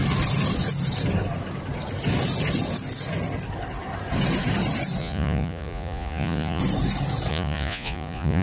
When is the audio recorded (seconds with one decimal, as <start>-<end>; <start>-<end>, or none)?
0.0-5.0; 6.6-7.3